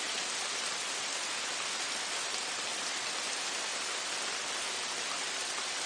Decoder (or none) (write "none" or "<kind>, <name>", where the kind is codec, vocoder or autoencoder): none